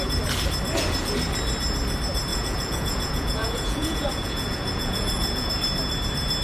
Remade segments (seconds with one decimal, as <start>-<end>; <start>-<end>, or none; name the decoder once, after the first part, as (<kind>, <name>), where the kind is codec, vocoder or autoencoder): 2.3-5.5 (vocoder, Vocos)